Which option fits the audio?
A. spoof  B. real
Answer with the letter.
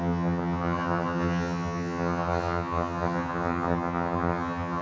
A